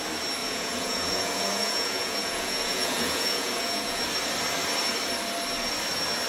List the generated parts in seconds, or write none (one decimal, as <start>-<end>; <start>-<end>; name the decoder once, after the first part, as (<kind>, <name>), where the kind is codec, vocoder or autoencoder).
0.4-4.0 (vocoder, Vocos)